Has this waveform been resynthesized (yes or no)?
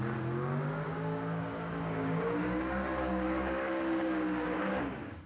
yes